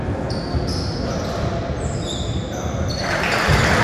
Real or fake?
real